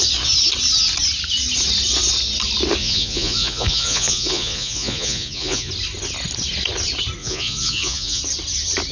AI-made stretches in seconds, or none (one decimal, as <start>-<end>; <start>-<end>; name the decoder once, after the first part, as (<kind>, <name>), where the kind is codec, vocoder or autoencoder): 2.8-5.7 (vocoder, Vocos); 7.2-8.2